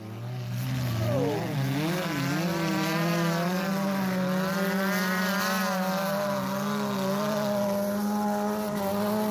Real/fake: real